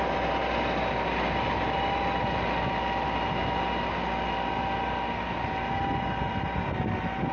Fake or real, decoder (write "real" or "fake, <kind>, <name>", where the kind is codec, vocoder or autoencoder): real